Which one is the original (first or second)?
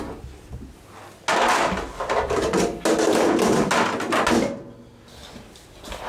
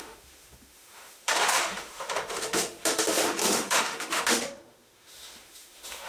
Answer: first